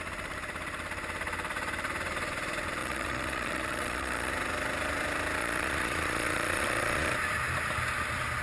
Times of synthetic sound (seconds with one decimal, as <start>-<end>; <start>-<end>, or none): 2.8-4.3; 5.4-7.1